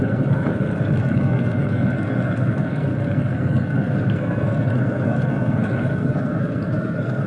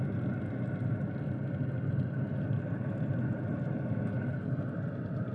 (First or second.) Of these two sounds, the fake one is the first